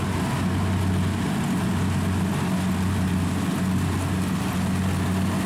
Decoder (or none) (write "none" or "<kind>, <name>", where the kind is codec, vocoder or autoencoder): none